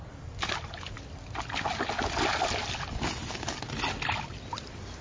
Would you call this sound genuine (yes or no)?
yes